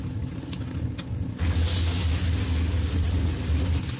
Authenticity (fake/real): real